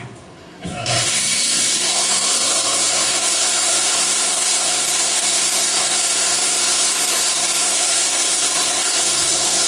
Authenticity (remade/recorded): remade